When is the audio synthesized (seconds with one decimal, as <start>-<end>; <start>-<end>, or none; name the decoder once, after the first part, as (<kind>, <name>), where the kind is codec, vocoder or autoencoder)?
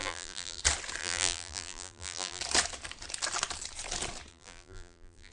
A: 0.0-0.6 (vocoder, BigVGAN v2); 1.0-2.4; 4.3-5.3